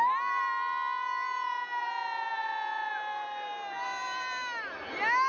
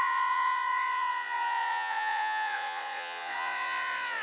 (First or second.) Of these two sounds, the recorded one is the first